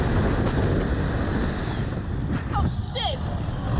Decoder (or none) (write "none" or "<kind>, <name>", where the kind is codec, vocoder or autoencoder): none